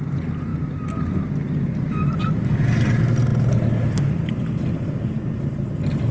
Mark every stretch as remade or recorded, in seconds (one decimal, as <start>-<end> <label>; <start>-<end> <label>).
0.0-6.1 recorded